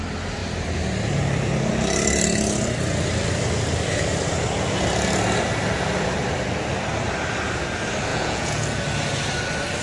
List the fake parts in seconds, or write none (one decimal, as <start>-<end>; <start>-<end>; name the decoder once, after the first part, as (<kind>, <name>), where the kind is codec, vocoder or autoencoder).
8.1-8.8 (vocoder, Vocos)